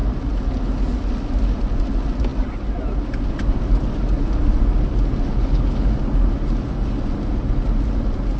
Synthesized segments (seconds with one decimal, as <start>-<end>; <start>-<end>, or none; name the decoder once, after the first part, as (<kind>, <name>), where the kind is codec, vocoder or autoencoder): 5.3-5.9 (codec, HILCodec)